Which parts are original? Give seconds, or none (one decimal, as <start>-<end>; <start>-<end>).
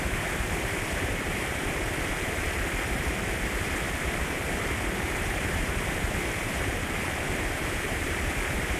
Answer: 1.6-5.0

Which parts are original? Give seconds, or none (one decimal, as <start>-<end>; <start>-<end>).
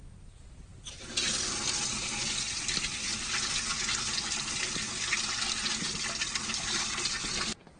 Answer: 0.0-7.8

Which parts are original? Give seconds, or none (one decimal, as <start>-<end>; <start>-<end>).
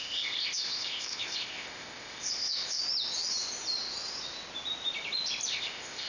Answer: 2.8-5.5